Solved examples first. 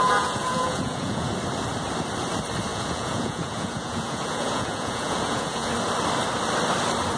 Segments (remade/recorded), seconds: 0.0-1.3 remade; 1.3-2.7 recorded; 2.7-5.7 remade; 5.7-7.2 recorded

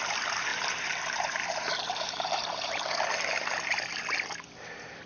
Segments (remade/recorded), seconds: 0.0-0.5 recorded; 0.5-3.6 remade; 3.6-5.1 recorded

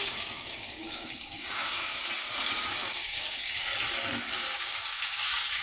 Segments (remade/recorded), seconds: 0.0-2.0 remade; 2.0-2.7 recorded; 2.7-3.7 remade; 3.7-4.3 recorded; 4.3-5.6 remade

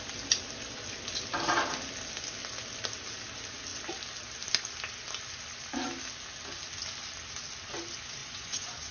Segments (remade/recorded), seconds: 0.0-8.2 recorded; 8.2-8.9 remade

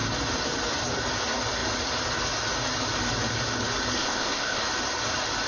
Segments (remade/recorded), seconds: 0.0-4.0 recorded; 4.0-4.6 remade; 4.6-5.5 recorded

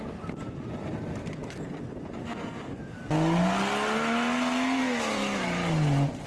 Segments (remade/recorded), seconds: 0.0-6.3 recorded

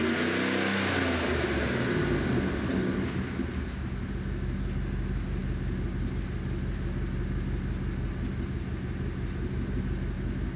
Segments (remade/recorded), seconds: 0.0-10.6 recorded